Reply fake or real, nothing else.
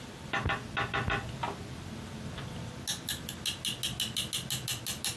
real